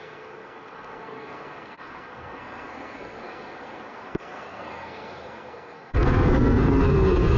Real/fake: fake